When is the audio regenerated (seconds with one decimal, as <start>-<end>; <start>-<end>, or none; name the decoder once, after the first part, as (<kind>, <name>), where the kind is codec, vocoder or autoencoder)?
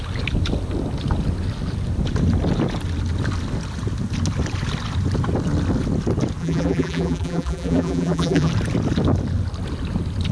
6.4-8.5 (vocoder, BigVGAN v2)